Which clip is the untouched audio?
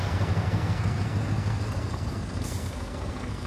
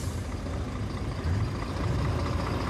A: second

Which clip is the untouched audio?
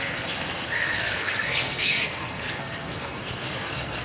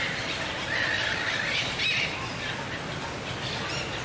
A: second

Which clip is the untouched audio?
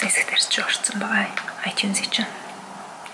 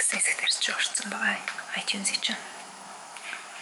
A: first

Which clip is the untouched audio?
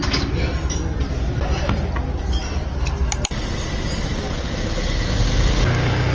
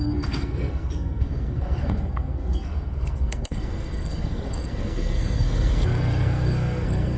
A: first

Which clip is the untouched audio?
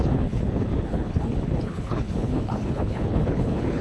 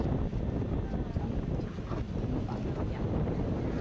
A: second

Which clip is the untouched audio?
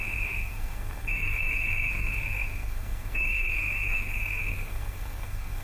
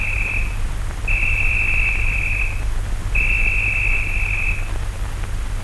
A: second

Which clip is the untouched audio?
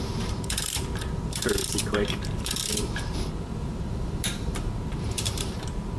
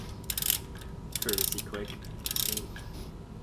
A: second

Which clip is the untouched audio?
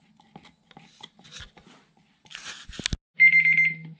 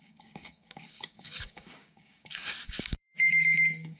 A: first